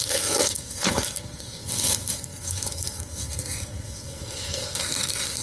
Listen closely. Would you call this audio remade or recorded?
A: remade